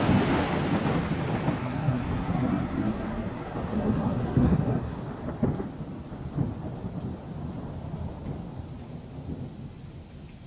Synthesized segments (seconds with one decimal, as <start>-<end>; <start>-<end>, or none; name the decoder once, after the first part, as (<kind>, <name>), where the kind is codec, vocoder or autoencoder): 1.6-5.0 (codec, SNAC)